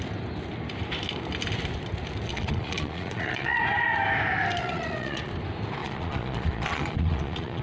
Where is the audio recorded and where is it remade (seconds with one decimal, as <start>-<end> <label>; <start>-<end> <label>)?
0.0-2.3 recorded; 2.3-3.6 remade; 3.6-4.6 recorded; 4.6-5.3 remade; 5.3-5.8 recorded; 5.8-7.6 remade